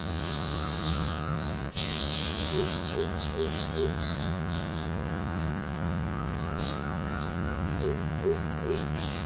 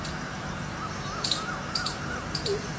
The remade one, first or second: first